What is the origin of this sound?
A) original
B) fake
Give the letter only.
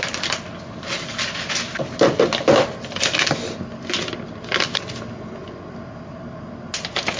A